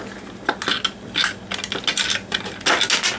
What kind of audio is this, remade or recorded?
recorded